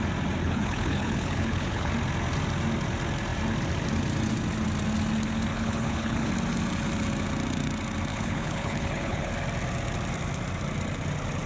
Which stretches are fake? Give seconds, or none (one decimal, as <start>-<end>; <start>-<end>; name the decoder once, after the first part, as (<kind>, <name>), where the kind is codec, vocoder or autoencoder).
0.4-1.9 (codec, HILCodec); 5.5-6.3; 8.1-9.3